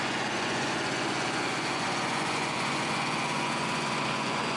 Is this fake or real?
fake